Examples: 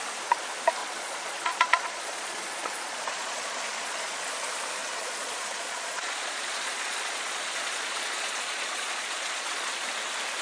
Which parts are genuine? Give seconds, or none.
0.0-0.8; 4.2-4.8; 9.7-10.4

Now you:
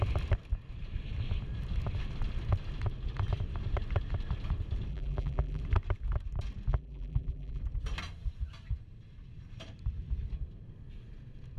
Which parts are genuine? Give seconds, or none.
0.0-4.9; 5.6-6.7; 7.6-11.6

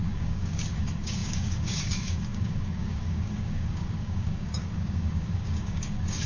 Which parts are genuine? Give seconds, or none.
none

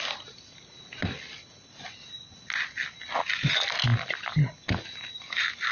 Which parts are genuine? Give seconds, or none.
0.0-5.7

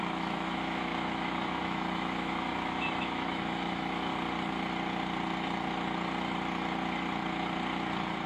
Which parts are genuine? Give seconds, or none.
4.1-8.3

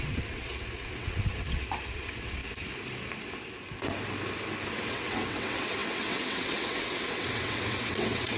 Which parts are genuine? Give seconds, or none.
2.4-4.7

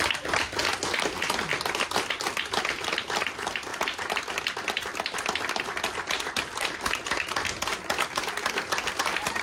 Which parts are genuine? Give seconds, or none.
0.6-2.8; 7.7-9.0

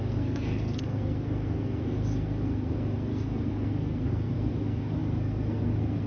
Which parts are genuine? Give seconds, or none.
none